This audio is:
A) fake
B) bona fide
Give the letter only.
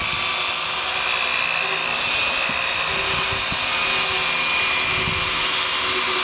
B